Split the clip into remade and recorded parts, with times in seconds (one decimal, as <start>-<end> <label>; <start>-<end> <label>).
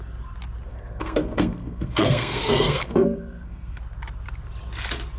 0.0-0.7 recorded; 0.7-3.8 remade; 3.8-5.2 recorded